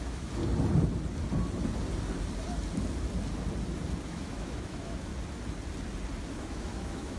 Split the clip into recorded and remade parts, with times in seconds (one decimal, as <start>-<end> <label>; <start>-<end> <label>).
0.0-0.4 remade; 0.4-4.1 recorded; 4.1-5.1 remade; 5.1-6.3 recorded; 6.3-7.2 remade